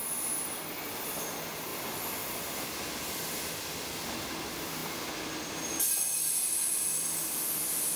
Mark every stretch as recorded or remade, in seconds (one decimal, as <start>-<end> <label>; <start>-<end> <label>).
0.0-8.0 recorded